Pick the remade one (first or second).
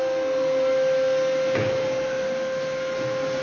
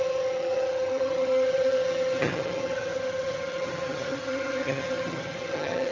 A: second